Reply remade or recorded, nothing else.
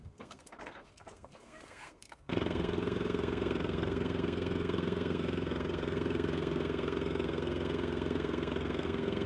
remade